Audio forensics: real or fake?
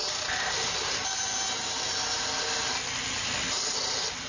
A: real